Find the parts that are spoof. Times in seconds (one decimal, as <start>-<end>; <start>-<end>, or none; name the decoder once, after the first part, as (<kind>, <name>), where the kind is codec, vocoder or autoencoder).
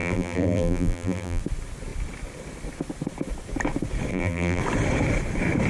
0.0-1.4 (vocoder, BigVGAN v2); 4.1-4.6